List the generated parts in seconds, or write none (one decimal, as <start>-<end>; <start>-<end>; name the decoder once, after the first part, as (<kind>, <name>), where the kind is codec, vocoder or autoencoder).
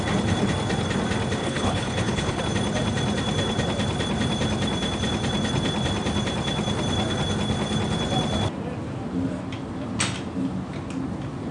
1.4-2.4 (codec, HILCodec)